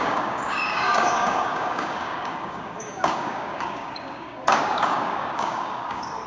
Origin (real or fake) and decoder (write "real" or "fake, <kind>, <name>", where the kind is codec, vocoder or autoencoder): fake, codec, DAC